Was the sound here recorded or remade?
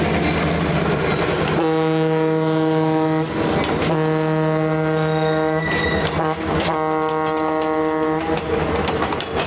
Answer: recorded